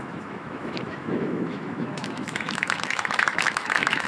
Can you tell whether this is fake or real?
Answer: fake